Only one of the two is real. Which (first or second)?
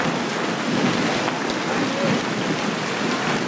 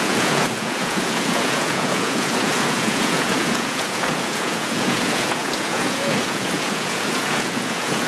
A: first